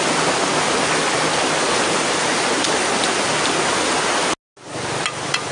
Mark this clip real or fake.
real